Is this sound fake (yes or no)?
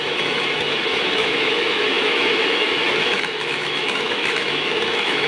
yes